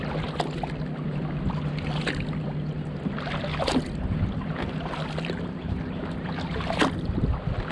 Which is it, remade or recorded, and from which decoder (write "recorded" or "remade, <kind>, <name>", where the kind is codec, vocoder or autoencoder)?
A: recorded